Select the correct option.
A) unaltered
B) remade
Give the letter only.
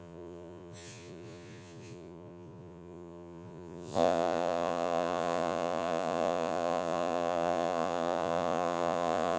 B